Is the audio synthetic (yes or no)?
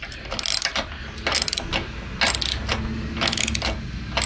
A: no